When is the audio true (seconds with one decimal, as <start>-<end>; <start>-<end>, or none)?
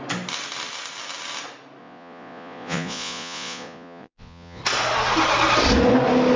0.0-1.8; 4.6-6.4